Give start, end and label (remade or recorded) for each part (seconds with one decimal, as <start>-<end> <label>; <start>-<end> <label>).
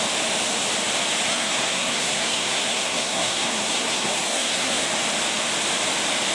0.0-1.3 recorded; 1.3-4.9 remade; 4.9-6.3 recorded